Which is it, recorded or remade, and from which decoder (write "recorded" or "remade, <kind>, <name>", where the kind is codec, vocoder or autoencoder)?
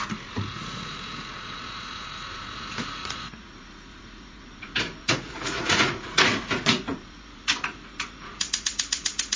remade, vocoder, Vocos